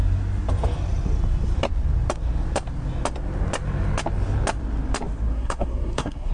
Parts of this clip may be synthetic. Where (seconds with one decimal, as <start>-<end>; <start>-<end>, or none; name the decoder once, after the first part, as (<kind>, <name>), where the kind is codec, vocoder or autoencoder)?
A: 5.3-6.3 (codec, SNAC)